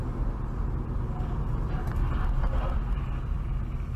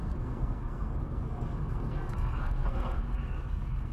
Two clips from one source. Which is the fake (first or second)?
second